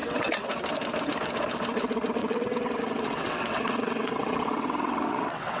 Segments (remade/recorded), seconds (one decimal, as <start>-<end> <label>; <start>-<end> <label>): 0.0-0.5 remade; 0.5-2.2 recorded; 2.2-5.6 remade

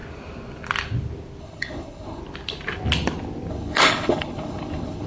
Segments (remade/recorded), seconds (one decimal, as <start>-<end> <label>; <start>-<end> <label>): 0.0-1.4 recorded; 1.4-2.2 remade; 2.2-3.5 recorded; 3.5-5.1 remade